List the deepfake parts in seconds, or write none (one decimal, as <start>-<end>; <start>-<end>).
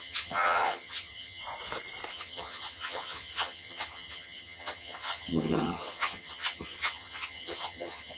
0.0-1.4; 2.1-8.2